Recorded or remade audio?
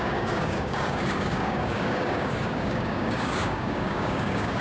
remade